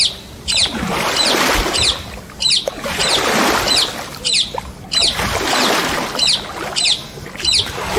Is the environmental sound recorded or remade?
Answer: recorded